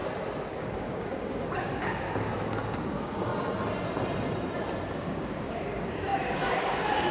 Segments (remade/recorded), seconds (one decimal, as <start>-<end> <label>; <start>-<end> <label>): 0.0-0.6 recorded; 0.6-3.3 remade; 3.3-4.9 recorded; 4.9-7.1 remade